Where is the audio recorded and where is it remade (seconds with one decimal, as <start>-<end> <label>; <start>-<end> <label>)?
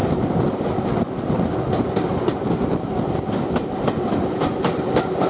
0.0-5.3 recorded